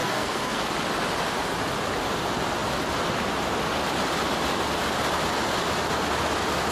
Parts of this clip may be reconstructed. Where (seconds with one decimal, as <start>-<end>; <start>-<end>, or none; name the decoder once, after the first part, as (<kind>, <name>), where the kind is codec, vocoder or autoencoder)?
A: 0.0-0.7 (codec, SNAC)